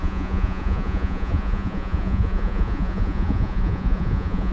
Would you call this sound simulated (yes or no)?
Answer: yes